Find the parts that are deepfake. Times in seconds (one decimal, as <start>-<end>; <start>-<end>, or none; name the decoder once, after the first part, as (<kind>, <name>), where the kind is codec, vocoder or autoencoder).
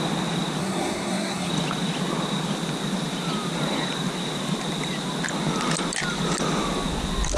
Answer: 0.6-1.5 (codec, SNAC)